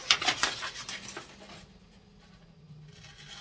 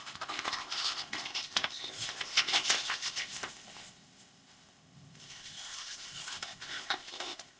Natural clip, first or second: first